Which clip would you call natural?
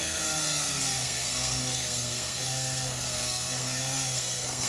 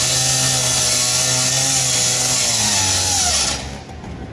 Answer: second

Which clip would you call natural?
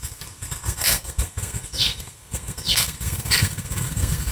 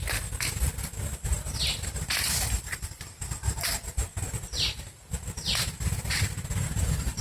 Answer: second